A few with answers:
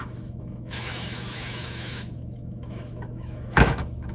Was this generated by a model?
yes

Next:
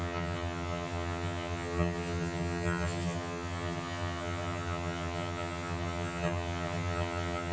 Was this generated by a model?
yes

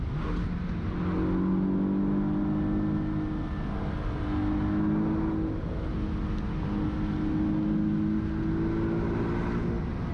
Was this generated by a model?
no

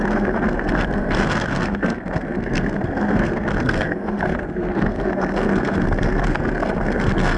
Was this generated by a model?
yes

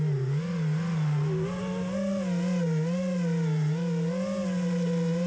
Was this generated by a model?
no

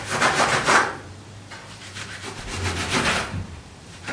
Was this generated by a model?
yes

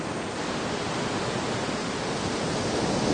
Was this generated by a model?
no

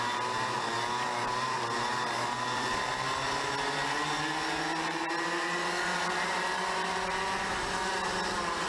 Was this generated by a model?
no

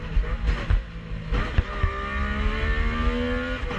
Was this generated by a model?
no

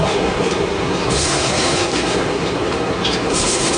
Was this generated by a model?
yes